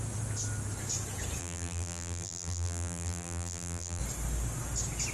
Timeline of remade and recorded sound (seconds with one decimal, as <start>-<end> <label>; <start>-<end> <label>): 0.0-1.4 recorded; 1.4-4.0 remade; 4.0-5.1 recorded